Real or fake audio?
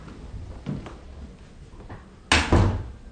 real